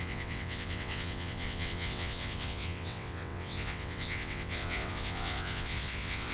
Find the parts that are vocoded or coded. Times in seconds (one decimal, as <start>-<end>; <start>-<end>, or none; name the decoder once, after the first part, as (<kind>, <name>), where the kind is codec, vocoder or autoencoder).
0.0-6.3 (vocoder, WaveNeXt)